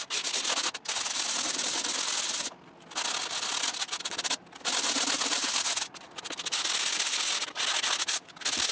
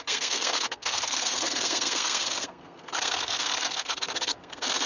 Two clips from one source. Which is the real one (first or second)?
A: first